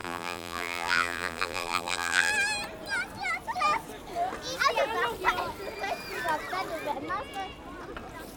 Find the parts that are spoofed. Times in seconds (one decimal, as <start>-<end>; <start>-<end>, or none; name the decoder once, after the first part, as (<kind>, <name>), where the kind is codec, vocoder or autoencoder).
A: 0.0-2.3 (vocoder, BigVGAN v2)